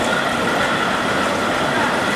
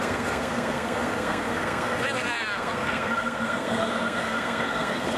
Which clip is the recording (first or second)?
first